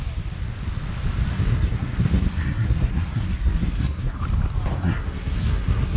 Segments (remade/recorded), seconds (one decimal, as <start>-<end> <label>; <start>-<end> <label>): 0.0-1.3 recorded; 1.3-4.2 remade; 4.2-4.8 recorded; 4.8-6.0 remade